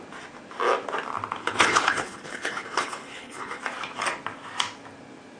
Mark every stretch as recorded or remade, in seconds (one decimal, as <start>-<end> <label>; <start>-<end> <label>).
0.0-1.4 recorded; 1.4-3.6 remade; 3.6-5.4 recorded